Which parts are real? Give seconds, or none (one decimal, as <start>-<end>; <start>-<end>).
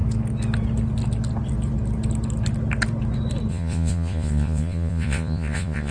0.0-3.5